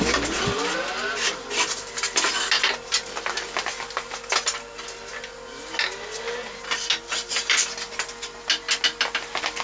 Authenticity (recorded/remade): recorded